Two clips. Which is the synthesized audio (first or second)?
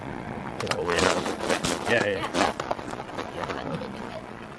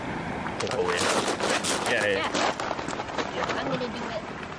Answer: first